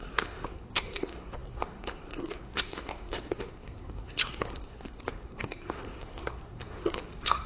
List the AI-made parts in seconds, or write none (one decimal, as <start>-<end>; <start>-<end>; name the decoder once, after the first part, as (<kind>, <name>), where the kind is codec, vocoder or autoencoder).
0.0-7.5 (codec, SNAC)